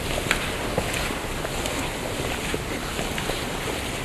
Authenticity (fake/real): real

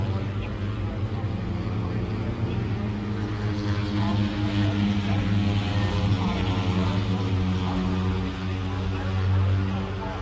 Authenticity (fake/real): real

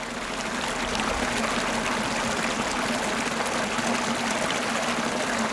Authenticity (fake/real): real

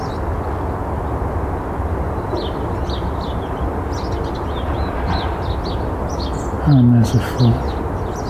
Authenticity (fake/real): real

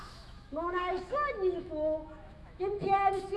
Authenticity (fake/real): fake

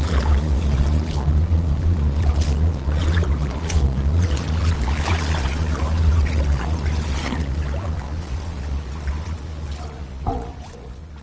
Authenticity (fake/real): fake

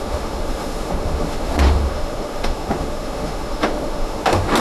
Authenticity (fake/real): fake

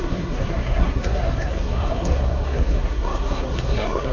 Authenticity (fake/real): fake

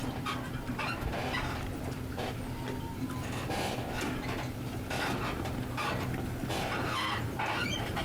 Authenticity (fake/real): fake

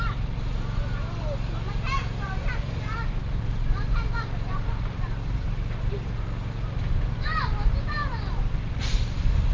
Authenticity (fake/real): fake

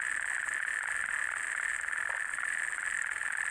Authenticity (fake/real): real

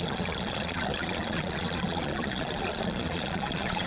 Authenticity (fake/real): fake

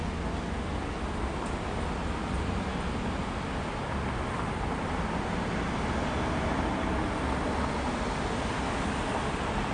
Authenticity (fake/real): real